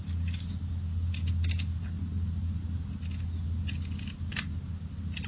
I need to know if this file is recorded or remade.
recorded